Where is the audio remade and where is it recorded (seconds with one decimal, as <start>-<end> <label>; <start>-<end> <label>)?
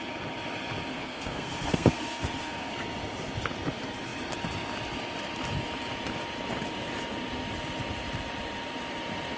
0.0-0.9 recorded; 0.9-2.7 remade; 2.7-9.4 recorded